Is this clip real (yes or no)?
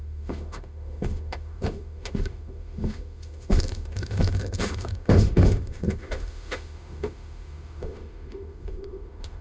no